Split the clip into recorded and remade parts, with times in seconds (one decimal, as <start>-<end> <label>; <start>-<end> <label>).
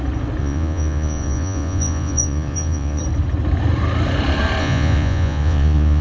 0.0-0.4 recorded; 0.4-3.0 remade; 3.0-4.6 recorded; 4.6-6.0 remade